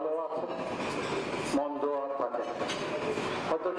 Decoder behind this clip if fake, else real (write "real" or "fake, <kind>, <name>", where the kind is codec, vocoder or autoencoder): real